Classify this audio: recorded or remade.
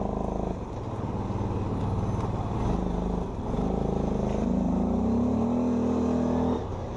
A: recorded